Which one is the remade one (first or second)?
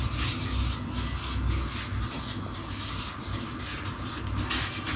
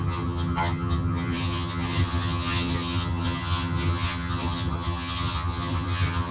second